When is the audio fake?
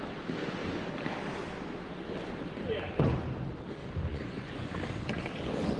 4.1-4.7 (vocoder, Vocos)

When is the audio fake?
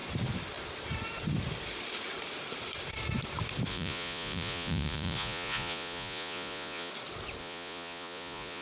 3.7-6.9 (vocoder, Vocos); 7.4-8.6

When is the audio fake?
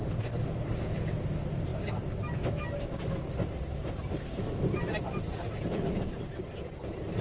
none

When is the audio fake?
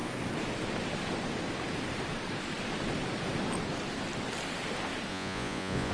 5.1-5.9 (vocoder, Vocos)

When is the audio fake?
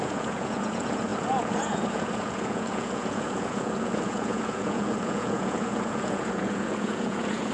0.0-7.5 (vocoder, Vocos)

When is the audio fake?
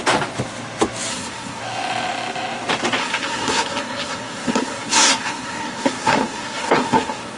1.1-1.6 (codec, SNAC); 3.0-7.4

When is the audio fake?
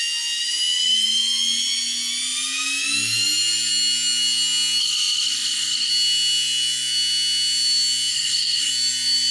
4.8-5.9 (codec, SNAC); 8.1-8.7